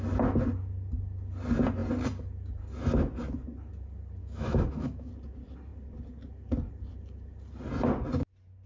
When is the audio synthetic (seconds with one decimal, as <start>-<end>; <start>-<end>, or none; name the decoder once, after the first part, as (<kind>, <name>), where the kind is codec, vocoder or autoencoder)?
4.2-5.1 (autoencoder, DAC-VAE)